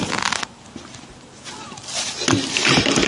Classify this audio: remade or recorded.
recorded